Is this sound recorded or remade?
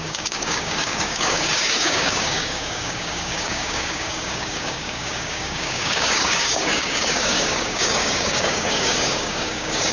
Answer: remade